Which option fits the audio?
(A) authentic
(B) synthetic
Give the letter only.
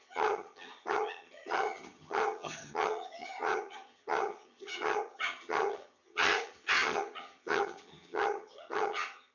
B